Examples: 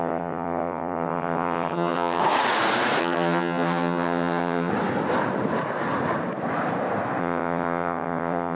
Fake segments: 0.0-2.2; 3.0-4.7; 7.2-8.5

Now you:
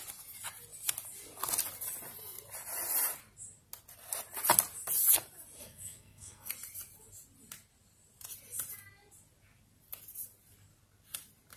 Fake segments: 5.6-6.5

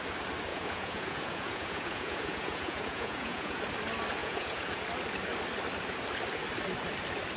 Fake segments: 0.5-3.6; 4.2-4.8